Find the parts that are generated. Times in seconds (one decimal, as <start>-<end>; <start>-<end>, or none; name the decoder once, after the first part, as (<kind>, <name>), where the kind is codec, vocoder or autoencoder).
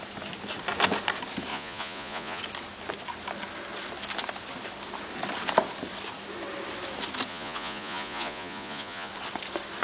1.5-2.4 (vocoder, Vocos); 7.3-9.1